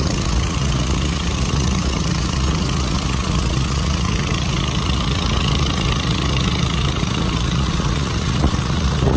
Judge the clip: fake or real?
fake